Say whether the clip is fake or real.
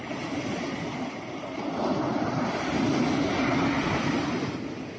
real